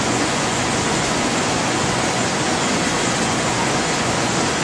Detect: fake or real fake